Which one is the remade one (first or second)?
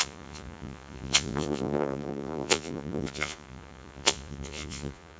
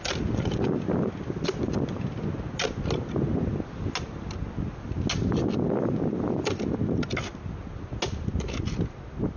first